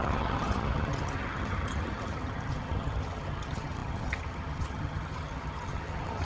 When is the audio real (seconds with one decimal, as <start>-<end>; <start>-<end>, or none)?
none